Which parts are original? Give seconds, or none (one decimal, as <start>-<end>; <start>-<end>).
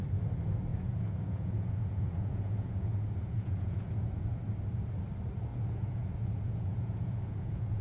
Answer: 0.0-0.7; 4.3-5.5